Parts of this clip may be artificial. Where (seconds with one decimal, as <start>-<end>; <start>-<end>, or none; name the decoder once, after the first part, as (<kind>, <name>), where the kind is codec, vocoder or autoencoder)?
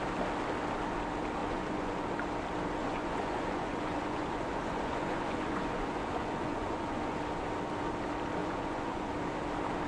1.4-2.1 (vocoder, Vocos); 2.8-7.2; 8.4-9.1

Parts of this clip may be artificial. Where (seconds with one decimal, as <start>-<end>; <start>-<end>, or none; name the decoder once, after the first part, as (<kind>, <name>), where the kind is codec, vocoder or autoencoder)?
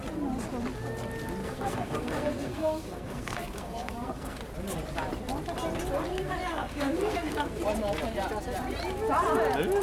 1.4-4.4 (codec, SNAC); 6.1-7.6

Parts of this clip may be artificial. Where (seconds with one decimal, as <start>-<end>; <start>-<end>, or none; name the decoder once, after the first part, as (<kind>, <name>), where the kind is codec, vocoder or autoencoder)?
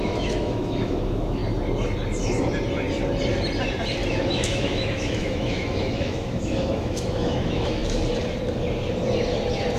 0.0-1.4 (autoencoder, DAC-VAE); 4.1-7.8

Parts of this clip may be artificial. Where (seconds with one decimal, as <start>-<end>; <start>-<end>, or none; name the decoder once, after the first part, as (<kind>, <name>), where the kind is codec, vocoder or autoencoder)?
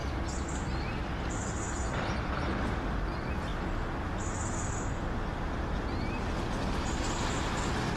none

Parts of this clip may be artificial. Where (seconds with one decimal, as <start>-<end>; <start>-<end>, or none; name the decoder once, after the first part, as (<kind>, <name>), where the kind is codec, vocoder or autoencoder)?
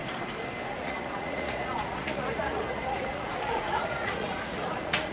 0.7-5.1 (vocoder, Vocos)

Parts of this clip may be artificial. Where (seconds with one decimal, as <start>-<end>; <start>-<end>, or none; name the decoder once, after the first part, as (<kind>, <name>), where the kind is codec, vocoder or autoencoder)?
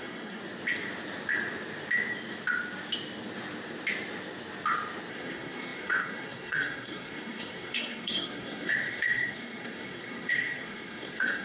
0.0-0.4 (codec, SNAC); 5.1-11.4